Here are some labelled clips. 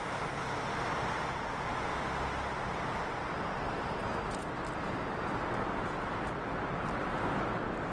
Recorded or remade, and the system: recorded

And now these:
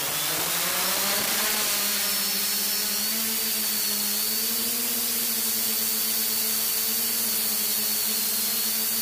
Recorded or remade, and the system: recorded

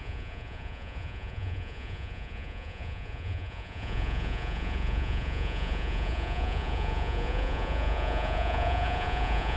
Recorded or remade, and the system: remade, vocoder, Vocos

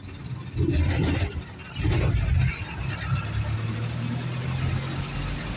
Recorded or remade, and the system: recorded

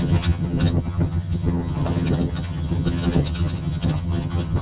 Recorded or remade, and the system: remade, vocoder, HiFi-GAN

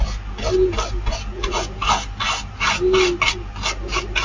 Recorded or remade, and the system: recorded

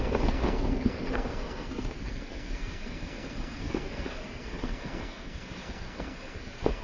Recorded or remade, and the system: remade, codec, SNAC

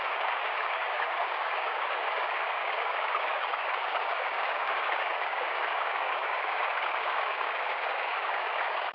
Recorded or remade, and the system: remade, codec, DAC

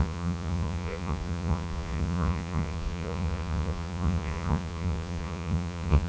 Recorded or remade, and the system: remade, vocoder, Vocos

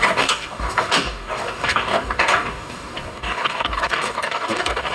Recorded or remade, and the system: remade, codec, DAC